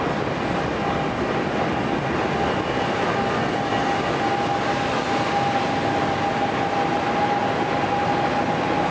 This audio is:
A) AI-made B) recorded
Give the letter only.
B